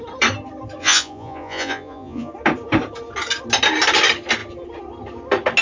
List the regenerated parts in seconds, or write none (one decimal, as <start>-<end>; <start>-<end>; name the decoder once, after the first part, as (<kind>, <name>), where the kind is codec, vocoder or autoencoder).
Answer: 0.8-2.3 (vocoder, Vocos)